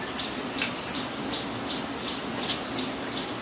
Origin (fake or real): real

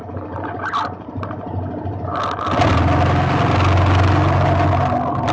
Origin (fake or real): real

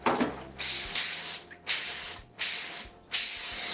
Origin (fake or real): real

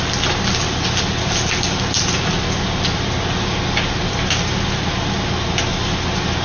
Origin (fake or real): real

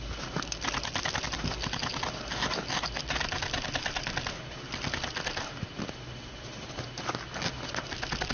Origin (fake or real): real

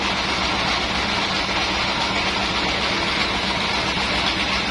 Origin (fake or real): real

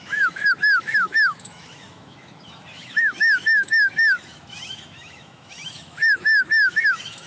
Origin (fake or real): fake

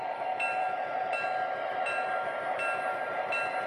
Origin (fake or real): real